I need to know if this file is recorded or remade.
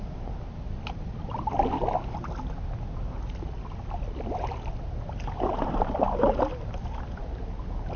recorded